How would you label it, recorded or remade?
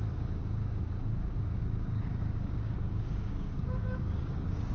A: remade